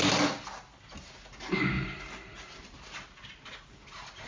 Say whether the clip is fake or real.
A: real